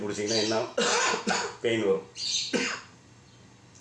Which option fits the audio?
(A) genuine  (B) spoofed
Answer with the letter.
A